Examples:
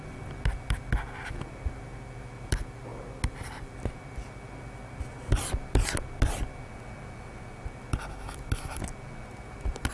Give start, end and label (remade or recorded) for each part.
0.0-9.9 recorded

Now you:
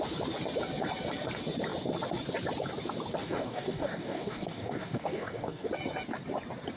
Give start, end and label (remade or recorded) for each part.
0.0-3.2 recorded; 3.2-5.7 remade; 5.7-6.8 recorded

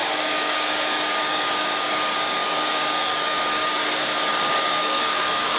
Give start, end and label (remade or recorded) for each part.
0.0-3.8 remade; 3.8-4.3 recorded; 4.3-5.6 remade

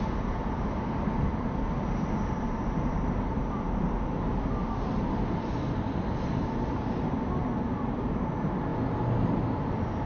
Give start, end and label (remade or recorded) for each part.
0.0-10.1 recorded

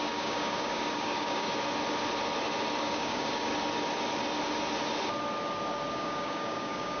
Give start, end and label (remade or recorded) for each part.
0.0-1.5 remade; 1.5-2.8 recorded; 2.8-3.5 remade; 3.5-5.9 recorded; 5.9-7.0 remade